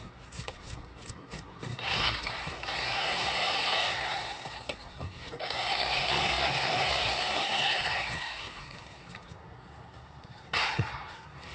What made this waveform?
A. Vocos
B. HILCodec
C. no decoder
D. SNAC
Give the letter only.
D